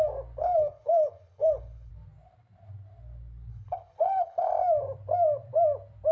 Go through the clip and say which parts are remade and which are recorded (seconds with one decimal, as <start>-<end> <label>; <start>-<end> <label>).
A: 0.0-0.4 recorded; 0.4-1.9 remade; 1.9-3.5 recorded; 3.5-4.5 remade; 4.5-6.1 recorded